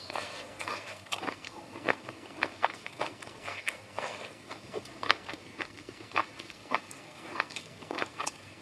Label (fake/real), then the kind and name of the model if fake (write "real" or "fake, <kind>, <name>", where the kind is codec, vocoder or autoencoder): fake, codec, SNAC